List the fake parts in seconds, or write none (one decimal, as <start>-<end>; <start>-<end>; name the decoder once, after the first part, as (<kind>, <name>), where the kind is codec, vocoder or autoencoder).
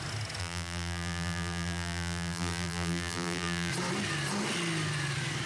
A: 0.4-3.7 (vocoder, BigVGAN v2)